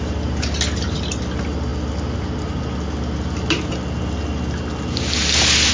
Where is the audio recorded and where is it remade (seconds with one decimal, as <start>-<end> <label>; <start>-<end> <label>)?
0.0-5.7 recorded